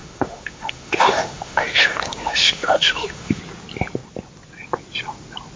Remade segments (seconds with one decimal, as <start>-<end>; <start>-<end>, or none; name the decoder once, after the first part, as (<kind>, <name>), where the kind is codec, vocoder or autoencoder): 0.0-3.4 (autoencoder, DAC-VAE)